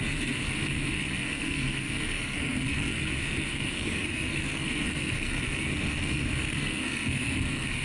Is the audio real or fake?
fake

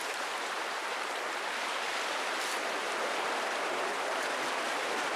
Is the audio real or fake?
fake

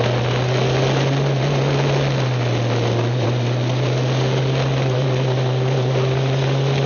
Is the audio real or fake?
real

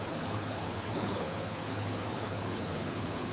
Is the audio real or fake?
fake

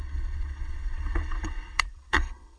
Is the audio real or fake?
fake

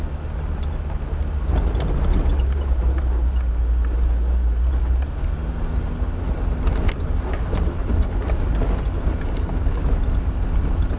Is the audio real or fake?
real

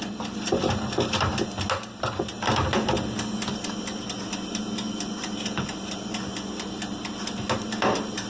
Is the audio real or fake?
real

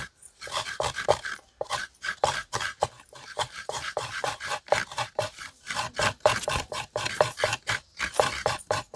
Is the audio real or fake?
fake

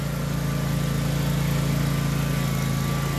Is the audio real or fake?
real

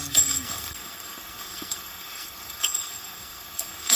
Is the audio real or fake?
fake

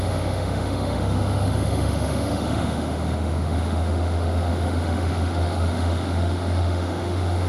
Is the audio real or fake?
fake